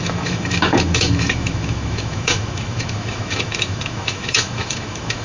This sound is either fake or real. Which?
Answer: fake